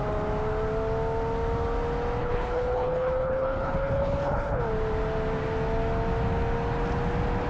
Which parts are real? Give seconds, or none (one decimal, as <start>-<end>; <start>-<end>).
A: 0.0-2.2; 4.6-7.5